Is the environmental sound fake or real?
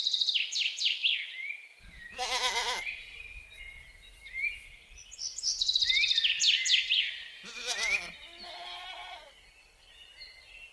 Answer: real